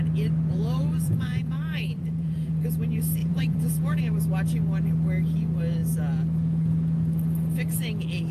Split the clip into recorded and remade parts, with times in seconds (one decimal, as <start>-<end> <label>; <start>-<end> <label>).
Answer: 0.0-0.5 recorded; 0.5-2.6 remade; 2.6-3.2 recorded; 3.2-4.0 remade; 4.0-8.3 recorded